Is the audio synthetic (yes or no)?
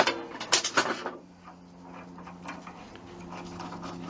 no